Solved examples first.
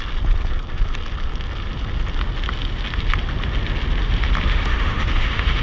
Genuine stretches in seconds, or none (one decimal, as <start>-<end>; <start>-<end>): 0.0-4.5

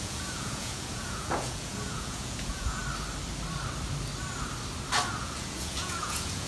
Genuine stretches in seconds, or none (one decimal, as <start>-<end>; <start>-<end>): 2.8-5.2

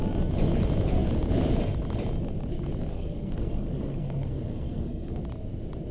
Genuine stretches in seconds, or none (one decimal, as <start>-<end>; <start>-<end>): 0.0-2.9; 5.2-5.9

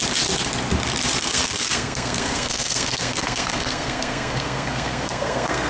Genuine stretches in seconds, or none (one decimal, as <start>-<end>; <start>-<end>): 0.0-1.2

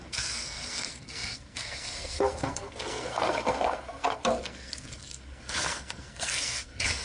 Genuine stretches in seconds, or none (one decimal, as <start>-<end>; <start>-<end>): none

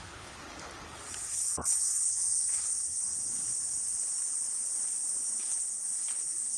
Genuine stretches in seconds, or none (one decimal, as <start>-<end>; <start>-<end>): 0.4-1.1; 3.0-5.4

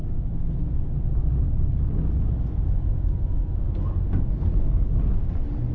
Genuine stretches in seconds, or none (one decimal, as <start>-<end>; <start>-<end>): 0.0-5.7

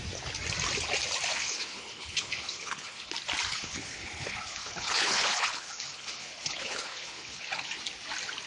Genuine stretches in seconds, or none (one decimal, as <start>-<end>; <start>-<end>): 0.0-1.3; 3.1-3.5; 7.8-8.5